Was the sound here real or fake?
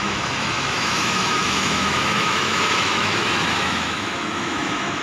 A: fake